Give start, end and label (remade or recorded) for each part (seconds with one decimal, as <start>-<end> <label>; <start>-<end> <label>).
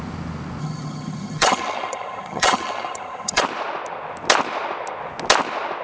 0.0-0.6 recorded; 0.6-3.4 remade; 3.4-5.8 recorded